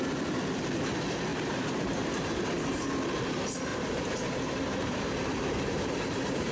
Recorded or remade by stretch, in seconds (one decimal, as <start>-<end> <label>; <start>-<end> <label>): 0.0-1.3 recorded; 1.3-2.4 remade; 2.4-3.7 recorded; 3.7-6.5 remade